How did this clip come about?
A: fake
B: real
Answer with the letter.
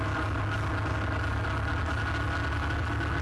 B